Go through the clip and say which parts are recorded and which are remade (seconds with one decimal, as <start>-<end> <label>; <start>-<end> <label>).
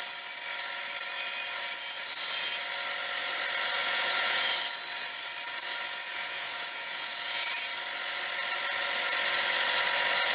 0.0-3.8 recorded; 3.8-4.5 remade; 4.5-6.1 recorded; 6.1-7.5 remade; 7.5-10.3 recorded